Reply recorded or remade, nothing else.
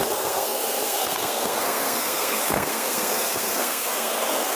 remade